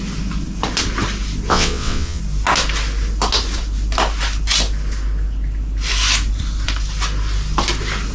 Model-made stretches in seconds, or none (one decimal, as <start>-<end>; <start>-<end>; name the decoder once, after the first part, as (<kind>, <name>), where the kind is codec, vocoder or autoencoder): 1.5-2.2 (vocoder, WaveNeXt)